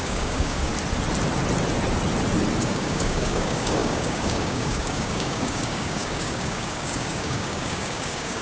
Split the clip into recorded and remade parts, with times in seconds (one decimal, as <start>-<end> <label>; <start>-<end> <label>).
0.0-0.7 remade; 0.7-2.6 recorded; 2.6-8.4 remade